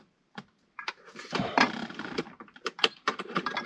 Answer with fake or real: fake